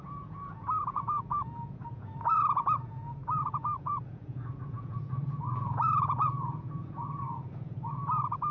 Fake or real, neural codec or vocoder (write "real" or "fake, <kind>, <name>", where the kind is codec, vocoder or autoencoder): fake, vocoder, Vocos